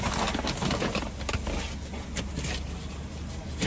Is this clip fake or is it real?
real